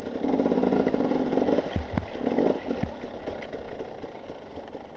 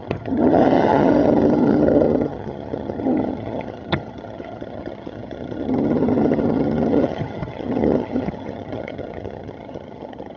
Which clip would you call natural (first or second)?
first